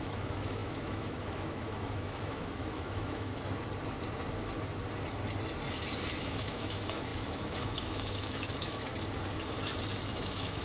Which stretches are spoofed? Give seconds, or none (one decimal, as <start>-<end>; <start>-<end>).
0.0-3.3; 6.2-8.9; 10.1-10.6